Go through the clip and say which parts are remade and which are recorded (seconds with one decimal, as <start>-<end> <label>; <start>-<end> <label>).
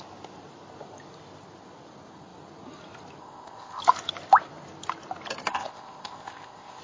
0.0-3.2 recorded; 3.2-3.8 remade; 3.8-5.5 recorded; 5.5-6.8 remade